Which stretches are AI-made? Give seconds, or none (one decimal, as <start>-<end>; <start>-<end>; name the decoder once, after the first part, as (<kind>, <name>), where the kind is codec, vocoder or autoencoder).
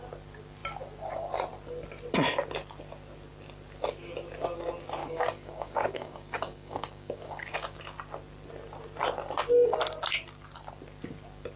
5.0-7.8 (codec, DAC)